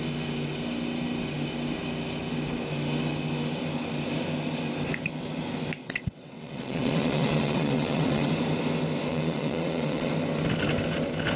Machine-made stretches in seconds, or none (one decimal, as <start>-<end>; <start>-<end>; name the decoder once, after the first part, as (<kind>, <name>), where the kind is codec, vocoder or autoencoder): 5.8-8.3 (vocoder, WaveNeXt); 9.1-10.1